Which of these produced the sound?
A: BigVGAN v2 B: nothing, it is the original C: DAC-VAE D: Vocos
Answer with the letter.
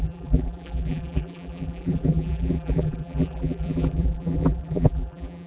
A